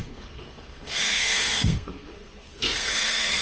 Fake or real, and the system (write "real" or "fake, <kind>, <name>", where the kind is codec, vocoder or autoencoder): fake, codec, SNAC